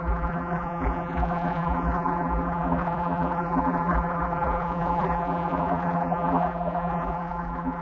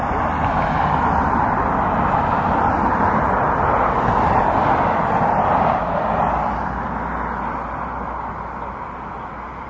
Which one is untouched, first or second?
second